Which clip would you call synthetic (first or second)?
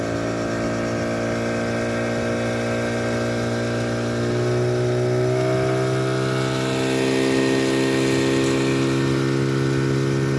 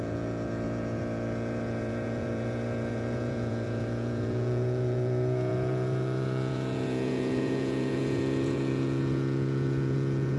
second